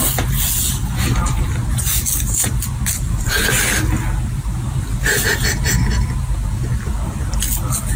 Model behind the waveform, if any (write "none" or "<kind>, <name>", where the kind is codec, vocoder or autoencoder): none